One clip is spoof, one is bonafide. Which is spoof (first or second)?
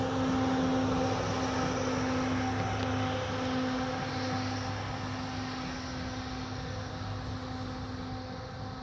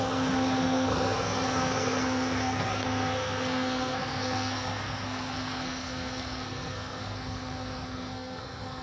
second